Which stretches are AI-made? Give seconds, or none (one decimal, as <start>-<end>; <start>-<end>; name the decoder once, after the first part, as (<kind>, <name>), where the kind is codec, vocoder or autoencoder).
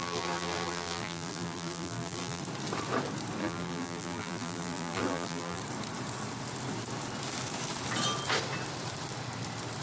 0.0-2.4 (vocoder, BigVGAN v2); 3.4-5.6